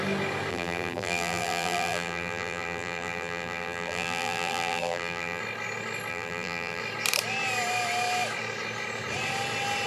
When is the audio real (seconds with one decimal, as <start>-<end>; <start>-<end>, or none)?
0.0-0.5; 5.4-6.1; 6.8-9.9